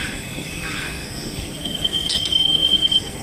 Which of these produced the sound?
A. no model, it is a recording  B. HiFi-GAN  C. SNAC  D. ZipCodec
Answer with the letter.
C